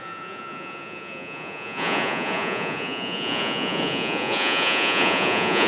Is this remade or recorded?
remade